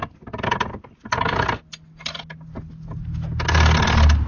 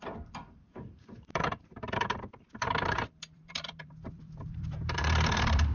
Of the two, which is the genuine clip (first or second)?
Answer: first